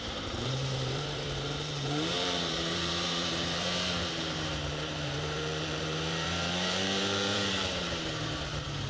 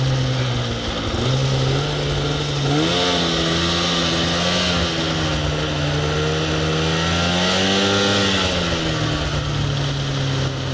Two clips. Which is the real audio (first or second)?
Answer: second